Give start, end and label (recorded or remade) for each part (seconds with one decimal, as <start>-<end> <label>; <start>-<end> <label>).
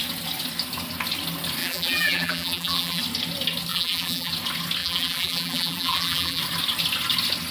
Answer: 0.0-1.6 recorded; 1.6-3.0 remade; 3.0-3.7 recorded; 3.7-4.3 remade; 4.3-4.8 recorded; 4.8-6.4 remade; 6.4-7.5 recorded